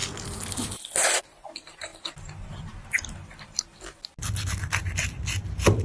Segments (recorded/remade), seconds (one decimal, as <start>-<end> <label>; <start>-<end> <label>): 0.0-5.8 recorded

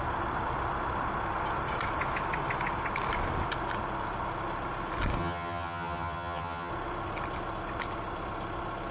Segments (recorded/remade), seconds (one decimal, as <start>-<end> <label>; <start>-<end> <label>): 0.0-5.2 recorded; 5.2-6.7 remade; 6.7-8.9 recorded

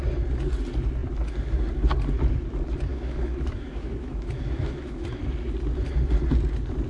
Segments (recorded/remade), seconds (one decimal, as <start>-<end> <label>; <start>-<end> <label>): 0.0-2.9 recorded; 2.9-5.2 remade; 5.2-6.9 recorded